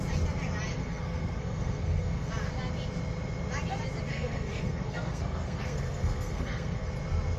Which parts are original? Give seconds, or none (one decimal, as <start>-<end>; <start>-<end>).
0.0-0.7; 2.3-4.1; 6.9-7.4